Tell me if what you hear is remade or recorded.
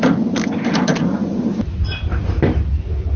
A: recorded